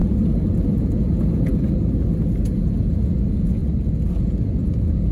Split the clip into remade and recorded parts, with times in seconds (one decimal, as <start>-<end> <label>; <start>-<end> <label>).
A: 0.0-0.7 recorded; 0.7-1.5 remade; 1.5-2.9 recorded; 2.9-3.6 remade; 3.6-4.2 recorded; 4.2-5.1 remade